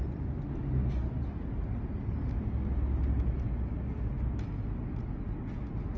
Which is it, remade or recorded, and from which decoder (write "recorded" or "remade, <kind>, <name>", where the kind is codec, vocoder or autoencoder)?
recorded